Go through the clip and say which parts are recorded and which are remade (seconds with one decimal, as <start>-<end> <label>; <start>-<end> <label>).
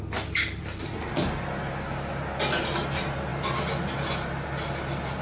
0.0-5.2 recorded